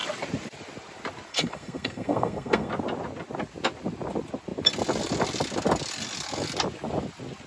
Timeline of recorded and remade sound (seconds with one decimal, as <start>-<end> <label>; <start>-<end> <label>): 0.0-1.3 recorded; 1.3-2.7 remade; 2.7-7.5 recorded